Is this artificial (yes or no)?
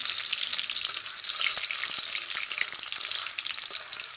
no